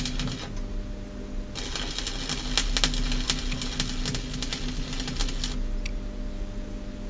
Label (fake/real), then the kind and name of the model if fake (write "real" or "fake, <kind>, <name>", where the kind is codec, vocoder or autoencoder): real